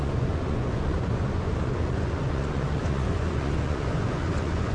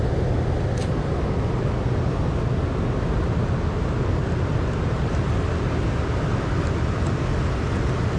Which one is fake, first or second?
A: first